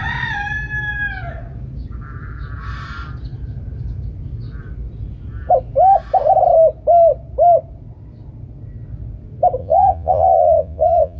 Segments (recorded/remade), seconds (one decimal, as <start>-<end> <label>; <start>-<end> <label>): 0.0-9.6 recorded; 9.6-11.2 remade